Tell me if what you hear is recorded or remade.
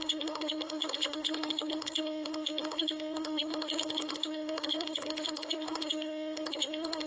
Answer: remade